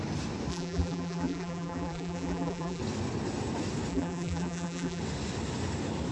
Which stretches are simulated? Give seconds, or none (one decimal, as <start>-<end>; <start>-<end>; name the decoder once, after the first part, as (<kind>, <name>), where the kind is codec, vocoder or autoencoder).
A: 0.5-2.8 (vocoder, BigVGAN v2); 3.9-5.0